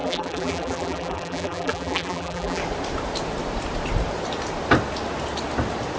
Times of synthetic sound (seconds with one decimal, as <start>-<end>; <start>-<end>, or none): 0.0-2.6